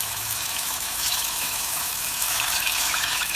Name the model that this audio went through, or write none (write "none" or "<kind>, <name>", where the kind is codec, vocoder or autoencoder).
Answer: autoencoder, DAC-VAE